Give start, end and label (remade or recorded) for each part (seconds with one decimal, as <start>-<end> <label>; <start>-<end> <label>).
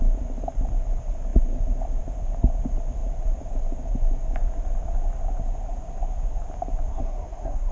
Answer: 0.0-6.9 recorded; 6.9-7.7 remade